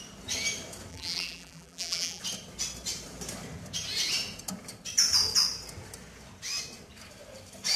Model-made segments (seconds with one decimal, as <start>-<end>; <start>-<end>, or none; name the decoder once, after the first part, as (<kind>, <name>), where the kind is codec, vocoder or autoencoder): 0.9-2.2 (vocoder, BigVGAN v2)